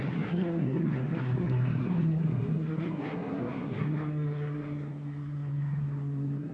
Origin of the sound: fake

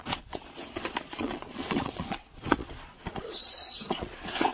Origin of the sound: fake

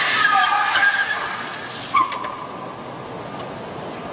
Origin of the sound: real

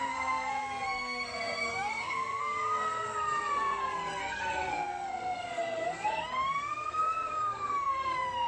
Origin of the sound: fake